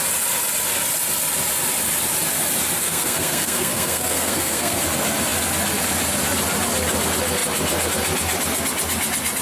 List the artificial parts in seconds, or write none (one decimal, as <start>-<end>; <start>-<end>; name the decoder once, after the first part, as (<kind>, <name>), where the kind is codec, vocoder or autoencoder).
2.8-4.8 (codec, SNAC)